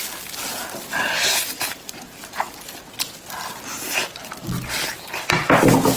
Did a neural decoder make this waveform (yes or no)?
no